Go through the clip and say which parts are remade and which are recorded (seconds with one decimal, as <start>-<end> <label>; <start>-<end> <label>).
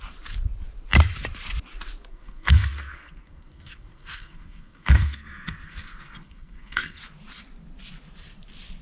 0.0-2.1 recorded; 2.1-7.0 remade; 7.0-8.8 recorded